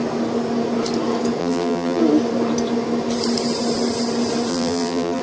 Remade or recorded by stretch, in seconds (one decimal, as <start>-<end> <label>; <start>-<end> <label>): 0.0-1.4 recorded; 1.4-2.0 remade; 2.0-4.5 recorded; 4.5-5.2 remade